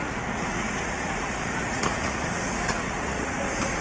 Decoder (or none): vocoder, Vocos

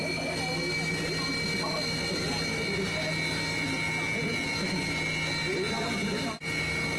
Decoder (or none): none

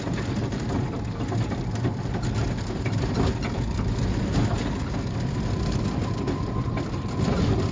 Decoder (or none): none